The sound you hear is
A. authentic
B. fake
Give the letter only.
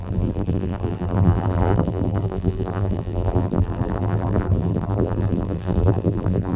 B